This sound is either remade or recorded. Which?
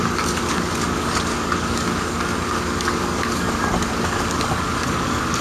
remade